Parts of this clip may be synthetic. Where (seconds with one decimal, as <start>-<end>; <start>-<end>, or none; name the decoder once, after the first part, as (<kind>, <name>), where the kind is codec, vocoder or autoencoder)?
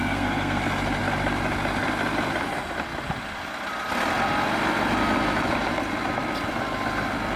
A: 0.0-0.6 (codec, SNAC)